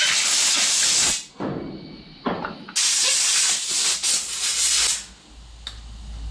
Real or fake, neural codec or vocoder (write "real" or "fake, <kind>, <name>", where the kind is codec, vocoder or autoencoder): real